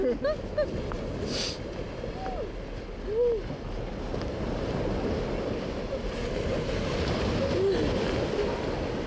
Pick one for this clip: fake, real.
real